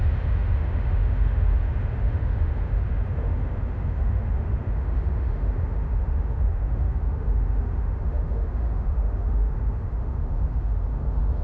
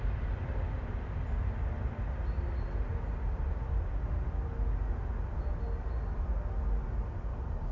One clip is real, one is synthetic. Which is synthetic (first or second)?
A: first